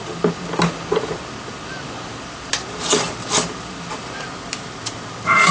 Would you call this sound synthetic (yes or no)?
no